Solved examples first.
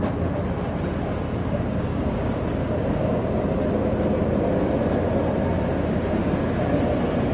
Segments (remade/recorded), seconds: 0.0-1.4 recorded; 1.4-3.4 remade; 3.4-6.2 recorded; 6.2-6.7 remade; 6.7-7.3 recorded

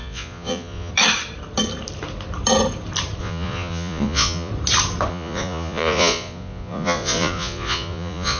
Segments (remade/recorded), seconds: 0.0-0.9 remade; 0.9-3.2 recorded; 3.2-4.5 remade; 4.5-5.1 recorded; 5.1-8.4 remade

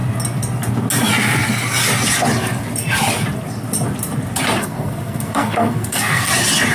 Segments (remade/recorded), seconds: 0.0-4.6 recorded; 4.6-6.3 remade; 6.3-6.7 recorded

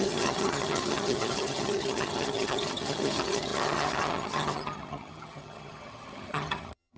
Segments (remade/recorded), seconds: 0.0-7.0 remade

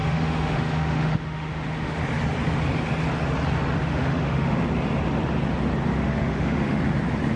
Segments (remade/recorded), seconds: 0.0-2.0 remade; 2.0-3.8 recorded; 3.8-4.6 remade; 4.6-5.9 recorded; 5.9-6.8 remade; 6.8-7.4 recorded